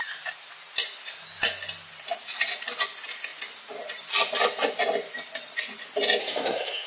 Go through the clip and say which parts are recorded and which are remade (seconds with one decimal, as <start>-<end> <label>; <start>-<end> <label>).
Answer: 0.0-6.2 recorded; 6.2-6.9 remade